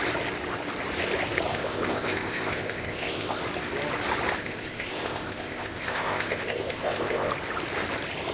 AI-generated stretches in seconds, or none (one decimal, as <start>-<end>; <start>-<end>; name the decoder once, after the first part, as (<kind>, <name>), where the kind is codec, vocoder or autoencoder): 1.5-3.4 (codec, ZipCodec); 4.4-7.3